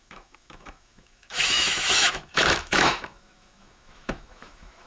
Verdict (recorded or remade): remade